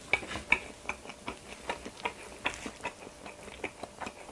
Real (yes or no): yes